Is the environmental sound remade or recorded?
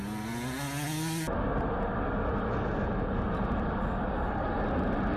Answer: recorded